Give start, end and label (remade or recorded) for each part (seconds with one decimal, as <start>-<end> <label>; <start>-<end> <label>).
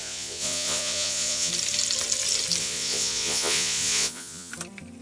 0.0-1.5 remade; 1.5-2.6 recorded; 2.6-4.5 remade; 4.5-5.0 recorded